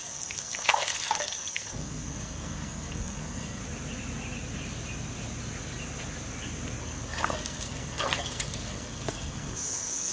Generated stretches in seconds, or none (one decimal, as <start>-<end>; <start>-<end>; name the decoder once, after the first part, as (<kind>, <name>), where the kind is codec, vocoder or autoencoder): 0.0-3.6 (codec, SNAC); 6.8-10.1